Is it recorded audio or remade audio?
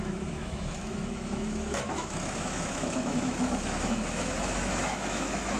remade